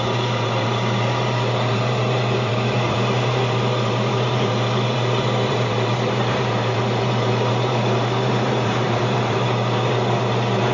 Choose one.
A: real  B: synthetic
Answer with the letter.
B